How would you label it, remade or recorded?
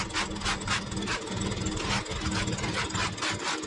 recorded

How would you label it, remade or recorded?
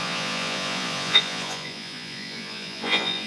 remade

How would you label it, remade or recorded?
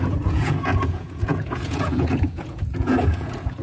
remade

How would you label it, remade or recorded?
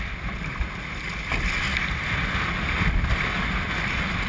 recorded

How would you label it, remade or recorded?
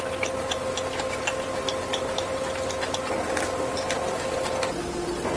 recorded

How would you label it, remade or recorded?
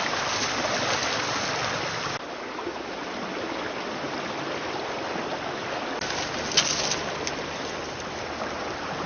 recorded